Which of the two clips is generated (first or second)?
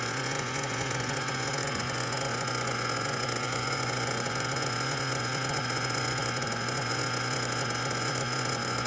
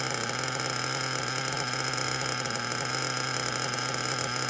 first